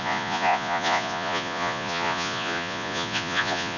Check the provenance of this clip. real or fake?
fake